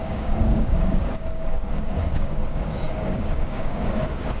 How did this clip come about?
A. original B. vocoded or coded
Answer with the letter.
B